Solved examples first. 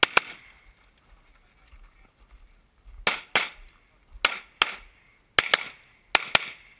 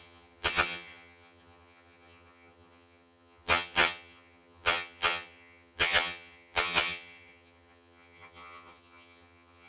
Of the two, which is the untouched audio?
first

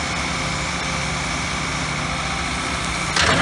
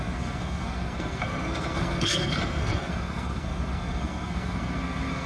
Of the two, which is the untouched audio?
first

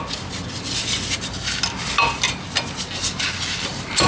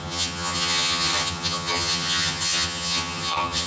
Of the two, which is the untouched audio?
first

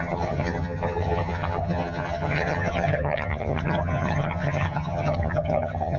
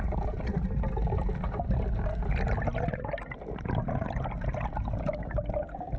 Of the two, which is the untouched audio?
second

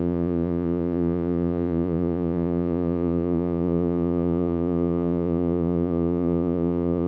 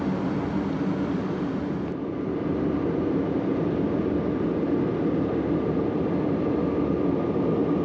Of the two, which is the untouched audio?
second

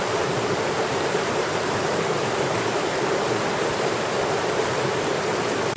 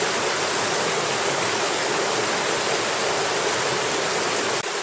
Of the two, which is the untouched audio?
second